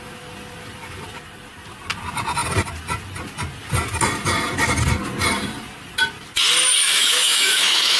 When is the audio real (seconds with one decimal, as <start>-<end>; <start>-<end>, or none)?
0.0-6.8